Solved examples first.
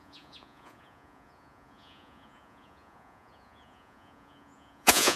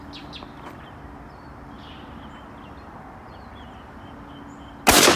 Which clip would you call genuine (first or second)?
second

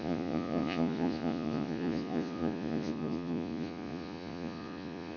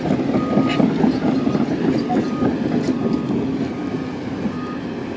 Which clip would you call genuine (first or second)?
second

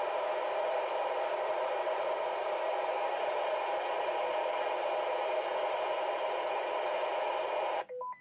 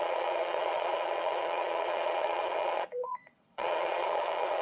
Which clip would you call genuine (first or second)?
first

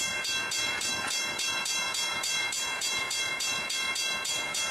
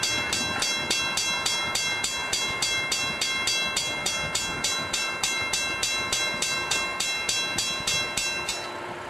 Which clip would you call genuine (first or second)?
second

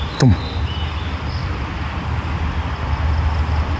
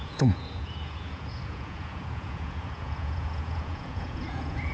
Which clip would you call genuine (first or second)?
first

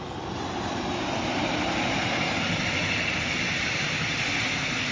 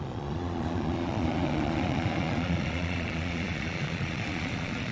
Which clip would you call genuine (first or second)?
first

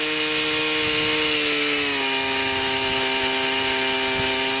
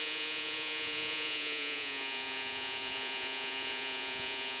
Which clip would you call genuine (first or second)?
first